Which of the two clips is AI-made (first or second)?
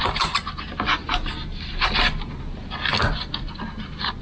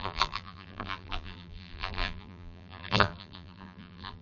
second